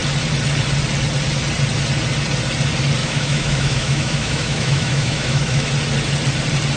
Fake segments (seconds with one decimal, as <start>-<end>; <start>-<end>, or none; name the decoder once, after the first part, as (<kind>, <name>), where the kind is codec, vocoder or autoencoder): 3.0-5.7 (autoencoder, DAC-VAE)